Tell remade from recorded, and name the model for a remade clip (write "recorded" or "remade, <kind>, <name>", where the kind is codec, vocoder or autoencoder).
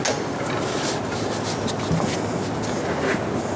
recorded